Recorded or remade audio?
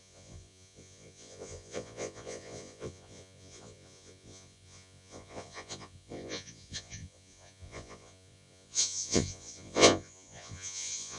remade